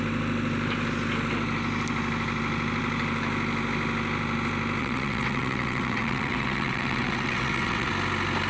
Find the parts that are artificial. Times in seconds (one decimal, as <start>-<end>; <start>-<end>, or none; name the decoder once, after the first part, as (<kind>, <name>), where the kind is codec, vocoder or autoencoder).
4.8-7.9 (vocoder, WaveNeXt)